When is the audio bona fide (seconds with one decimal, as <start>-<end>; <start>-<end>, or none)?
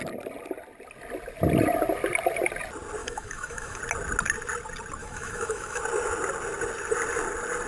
0.0-3.0; 3.8-5.0; 5.8-7.7